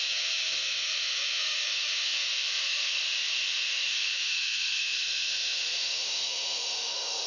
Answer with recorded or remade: remade